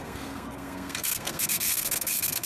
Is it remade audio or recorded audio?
remade